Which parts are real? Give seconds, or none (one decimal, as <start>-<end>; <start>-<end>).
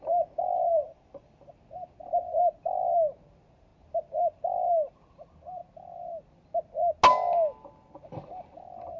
0.0-0.7; 1.5-9.0